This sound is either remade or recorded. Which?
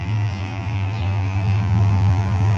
remade